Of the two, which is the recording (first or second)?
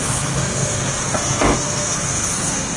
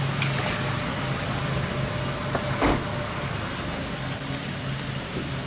second